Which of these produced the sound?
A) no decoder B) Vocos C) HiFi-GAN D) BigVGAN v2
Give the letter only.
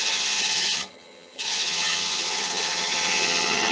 C